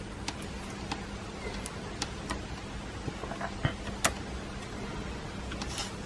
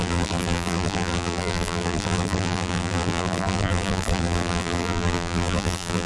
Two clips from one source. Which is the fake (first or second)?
second